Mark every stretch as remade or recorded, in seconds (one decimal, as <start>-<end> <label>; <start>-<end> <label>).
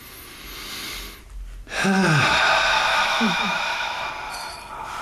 0.0-2.9 recorded; 2.9-4.1 remade; 4.1-5.0 recorded